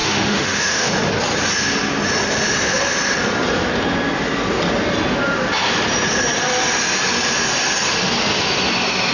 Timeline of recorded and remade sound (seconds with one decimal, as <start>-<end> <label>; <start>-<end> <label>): 0.0-0.9 remade; 0.9-9.1 recorded